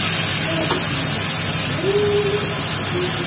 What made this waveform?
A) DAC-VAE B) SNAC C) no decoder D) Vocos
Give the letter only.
C